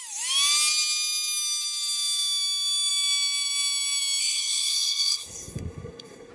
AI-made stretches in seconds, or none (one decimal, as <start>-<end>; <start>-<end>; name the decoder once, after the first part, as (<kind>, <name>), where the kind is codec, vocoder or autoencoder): 4.2-6.3 (codec, SNAC)